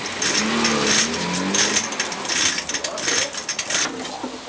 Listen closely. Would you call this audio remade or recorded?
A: recorded